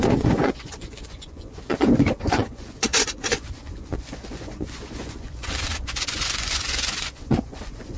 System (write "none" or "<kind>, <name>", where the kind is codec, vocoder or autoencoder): vocoder, Vocos